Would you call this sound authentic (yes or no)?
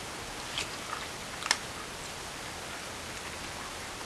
yes